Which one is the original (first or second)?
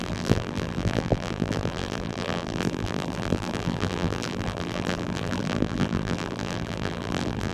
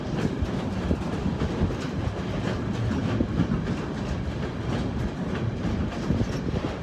second